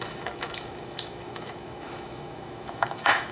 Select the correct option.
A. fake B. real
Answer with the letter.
A